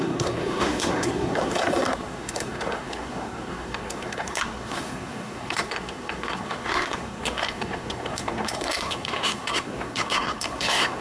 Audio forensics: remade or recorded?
remade